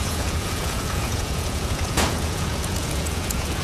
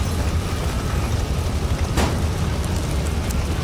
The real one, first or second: second